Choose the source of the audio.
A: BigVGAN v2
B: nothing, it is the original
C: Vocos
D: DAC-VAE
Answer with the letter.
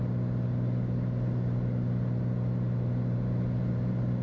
B